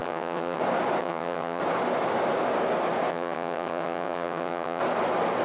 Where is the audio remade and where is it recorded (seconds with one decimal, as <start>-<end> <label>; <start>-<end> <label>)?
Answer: 0.0-0.6 remade; 0.6-1.0 recorded; 1.0-1.6 remade; 1.6-3.1 recorded; 3.1-4.8 remade; 4.8-5.4 recorded